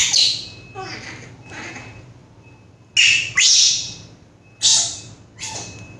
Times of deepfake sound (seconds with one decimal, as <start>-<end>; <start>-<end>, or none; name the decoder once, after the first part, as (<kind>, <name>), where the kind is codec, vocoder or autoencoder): 4.7-5.5 (vocoder, BigVGAN v2)